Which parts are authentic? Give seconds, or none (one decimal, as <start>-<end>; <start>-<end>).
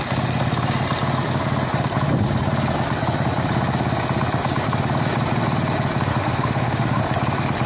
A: 0.0-6.1; 7.0-7.7